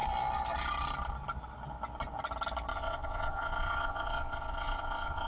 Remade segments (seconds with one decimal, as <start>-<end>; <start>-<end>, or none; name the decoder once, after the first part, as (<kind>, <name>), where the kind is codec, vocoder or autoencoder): 2.7-5.3 (vocoder, Vocos)

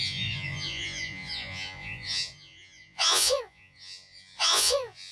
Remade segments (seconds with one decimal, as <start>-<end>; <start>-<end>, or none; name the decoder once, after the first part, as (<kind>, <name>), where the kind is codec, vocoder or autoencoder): 0.0-5.1 (vocoder, Vocos)

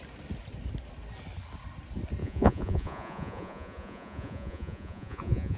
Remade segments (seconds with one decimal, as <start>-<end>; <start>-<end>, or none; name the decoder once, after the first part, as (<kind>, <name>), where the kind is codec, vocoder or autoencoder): 2.2-5.6 (vocoder, Vocos)

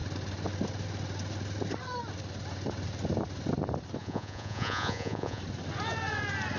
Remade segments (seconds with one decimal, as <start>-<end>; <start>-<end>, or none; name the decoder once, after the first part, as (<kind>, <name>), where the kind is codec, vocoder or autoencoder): 4.0-5.4 (vocoder, Vocos)

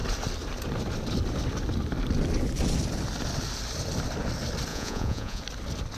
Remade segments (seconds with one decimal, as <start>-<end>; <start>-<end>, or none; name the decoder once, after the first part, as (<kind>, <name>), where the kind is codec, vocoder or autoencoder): 4.7-5.4 (vocoder, Vocos)

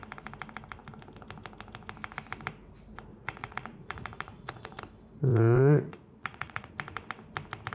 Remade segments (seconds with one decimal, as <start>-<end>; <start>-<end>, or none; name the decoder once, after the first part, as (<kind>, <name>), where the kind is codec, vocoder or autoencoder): 3.1-4.8 (vocoder, Vocos); 5.3-6.7

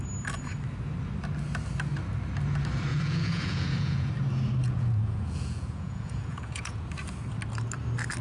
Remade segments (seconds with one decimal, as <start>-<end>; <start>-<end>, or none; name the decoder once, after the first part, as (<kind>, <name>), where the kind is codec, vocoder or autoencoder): 2.9-4.1 (vocoder, Vocos); 4.6-6.9